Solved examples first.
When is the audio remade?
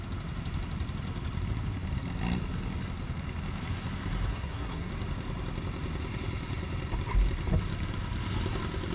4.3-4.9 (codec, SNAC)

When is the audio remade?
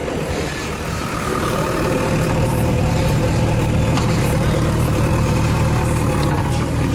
1.0-5.1 (vocoder, BigVGAN v2)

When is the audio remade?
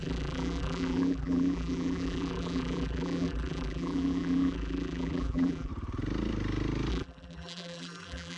0.0-5.7 (vocoder, BigVGAN v2); 6.9-8.4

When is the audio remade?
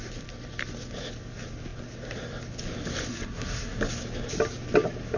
3.1-3.8 (codec, SNAC)